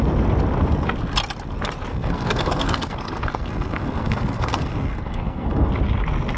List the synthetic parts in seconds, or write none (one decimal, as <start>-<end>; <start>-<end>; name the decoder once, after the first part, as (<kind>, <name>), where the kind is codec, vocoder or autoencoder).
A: 1.9-5.7 (codec, SNAC)